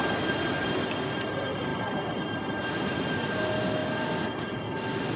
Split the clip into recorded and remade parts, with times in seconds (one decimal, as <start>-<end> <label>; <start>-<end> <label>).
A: 0.0-5.2 recorded